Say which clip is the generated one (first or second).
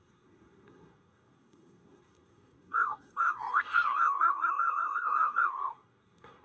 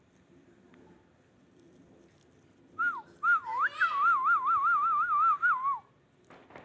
first